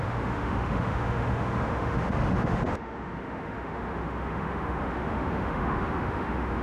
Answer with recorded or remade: remade